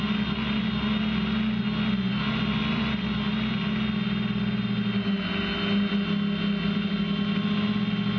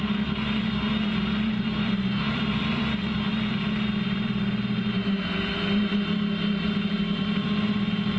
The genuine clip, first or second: first